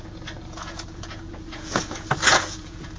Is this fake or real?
fake